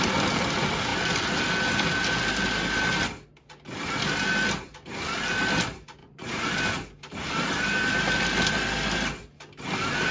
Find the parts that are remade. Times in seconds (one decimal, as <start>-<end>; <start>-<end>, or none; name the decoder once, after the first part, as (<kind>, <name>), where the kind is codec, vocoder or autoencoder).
6.0-6.5 (vocoder, Vocos)